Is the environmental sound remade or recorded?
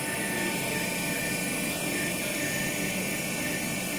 recorded